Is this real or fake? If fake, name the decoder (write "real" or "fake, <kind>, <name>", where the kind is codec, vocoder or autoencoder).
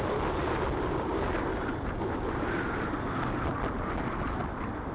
real